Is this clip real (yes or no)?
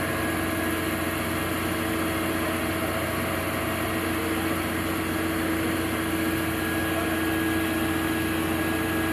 yes